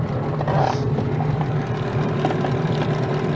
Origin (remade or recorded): recorded